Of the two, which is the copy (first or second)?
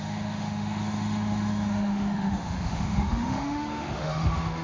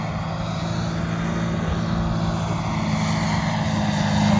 first